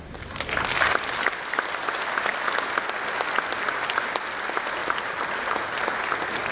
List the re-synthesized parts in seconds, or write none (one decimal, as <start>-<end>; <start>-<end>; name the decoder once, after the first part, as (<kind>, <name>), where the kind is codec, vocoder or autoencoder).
none